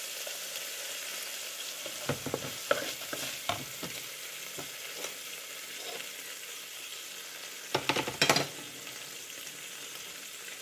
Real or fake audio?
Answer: real